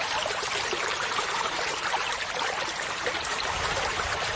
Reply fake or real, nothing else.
fake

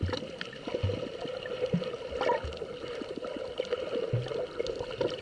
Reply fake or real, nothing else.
real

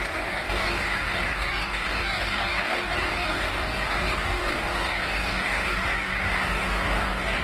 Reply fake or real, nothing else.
fake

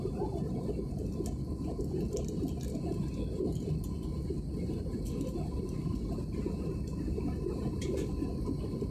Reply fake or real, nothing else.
real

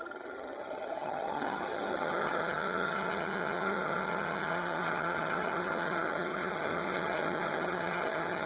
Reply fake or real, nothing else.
fake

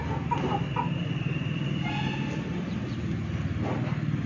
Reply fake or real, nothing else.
real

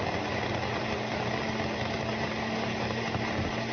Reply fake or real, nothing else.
real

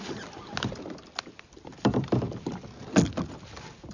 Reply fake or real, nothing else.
real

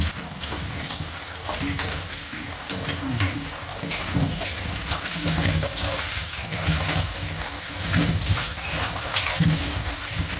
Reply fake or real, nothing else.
fake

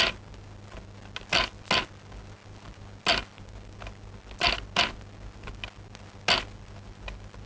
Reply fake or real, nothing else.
real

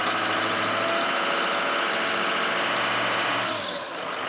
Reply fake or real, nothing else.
real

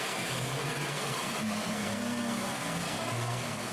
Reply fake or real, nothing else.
fake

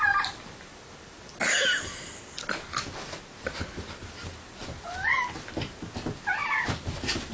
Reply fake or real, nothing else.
real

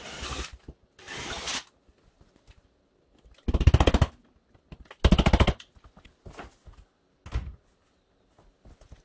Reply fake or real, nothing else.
real